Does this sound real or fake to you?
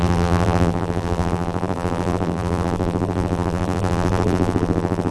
fake